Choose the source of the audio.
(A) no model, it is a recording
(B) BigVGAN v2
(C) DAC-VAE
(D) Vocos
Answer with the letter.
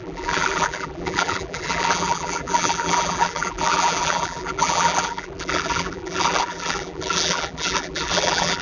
B